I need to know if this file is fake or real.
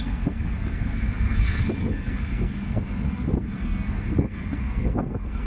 fake